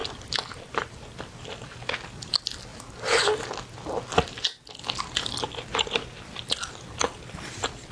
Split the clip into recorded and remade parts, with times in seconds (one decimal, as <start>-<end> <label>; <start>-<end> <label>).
0.0-0.9 remade; 0.9-7.9 recorded